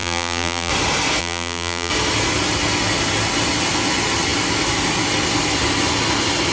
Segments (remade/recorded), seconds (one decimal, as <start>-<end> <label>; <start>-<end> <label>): 0.0-0.7 remade; 0.7-1.2 recorded; 1.2-1.9 remade; 1.9-6.5 recorded